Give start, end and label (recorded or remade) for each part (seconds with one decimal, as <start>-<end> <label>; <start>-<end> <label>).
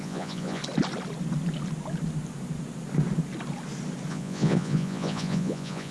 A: 0.0-0.6 remade; 0.6-4.1 recorded; 4.1-5.9 remade